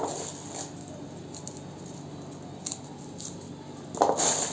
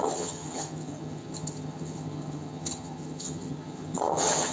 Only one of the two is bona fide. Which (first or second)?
first